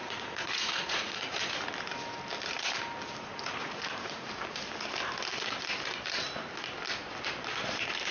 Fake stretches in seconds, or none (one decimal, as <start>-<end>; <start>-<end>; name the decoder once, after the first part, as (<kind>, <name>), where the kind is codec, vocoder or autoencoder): 0.0-1.5 (vocoder, Vocos); 3.6-4.3